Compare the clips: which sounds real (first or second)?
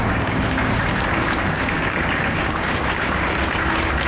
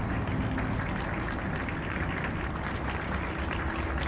second